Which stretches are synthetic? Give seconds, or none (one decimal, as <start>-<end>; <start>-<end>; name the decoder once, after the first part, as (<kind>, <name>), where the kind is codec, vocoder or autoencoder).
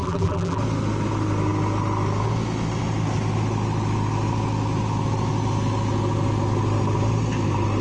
0.0-0.6 (vocoder, BigVGAN v2)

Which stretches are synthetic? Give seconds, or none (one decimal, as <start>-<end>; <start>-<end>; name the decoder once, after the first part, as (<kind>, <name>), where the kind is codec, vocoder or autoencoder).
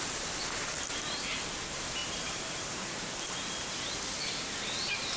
2.0-4.2 (vocoder, BigVGAN v2)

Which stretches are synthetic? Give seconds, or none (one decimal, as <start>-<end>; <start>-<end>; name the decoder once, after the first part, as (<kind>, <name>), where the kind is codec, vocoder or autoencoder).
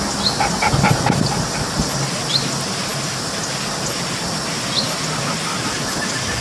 none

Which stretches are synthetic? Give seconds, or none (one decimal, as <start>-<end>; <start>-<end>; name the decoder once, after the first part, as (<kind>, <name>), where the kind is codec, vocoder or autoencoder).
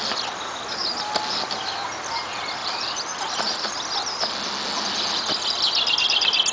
2.6-3.7 (vocoder, BigVGAN v2)